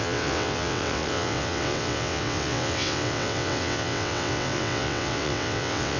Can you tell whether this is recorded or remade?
remade